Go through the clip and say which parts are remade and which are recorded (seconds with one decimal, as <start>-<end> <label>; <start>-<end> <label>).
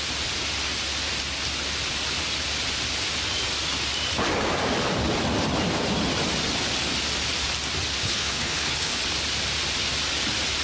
0.0-8.0 recorded; 8.0-9.0 remade; 9.0-10.6 recorded